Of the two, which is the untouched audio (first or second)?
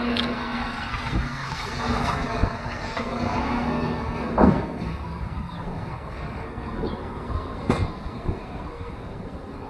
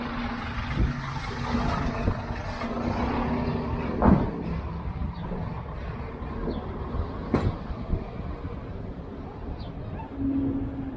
second